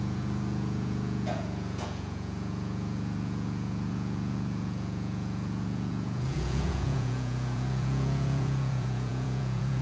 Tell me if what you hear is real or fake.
fake